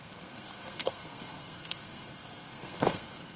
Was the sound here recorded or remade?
remade